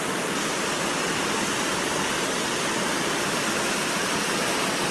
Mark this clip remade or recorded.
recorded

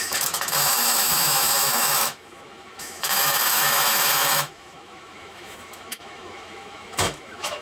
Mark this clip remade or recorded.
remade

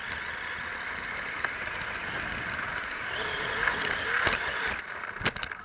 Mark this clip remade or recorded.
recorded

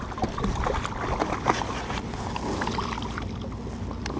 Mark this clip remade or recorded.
recorded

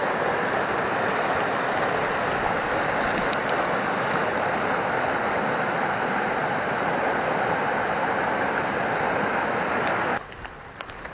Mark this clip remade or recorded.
recorded